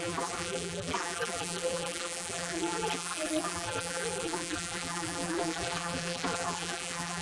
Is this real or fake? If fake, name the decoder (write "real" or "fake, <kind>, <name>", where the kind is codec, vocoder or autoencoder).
fake, vocoder, BigVGAN v2